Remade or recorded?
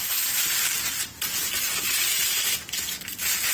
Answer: recorded